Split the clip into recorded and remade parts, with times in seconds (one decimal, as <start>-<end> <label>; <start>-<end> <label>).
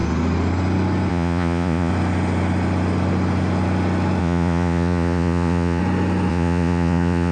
0.0-1.1 recorded; 1.1-1.9 remade; 1.9-4.2 recorded; 4.2-5.8 remade; 5.8-6.3 recorded; 6.3-7.3 remade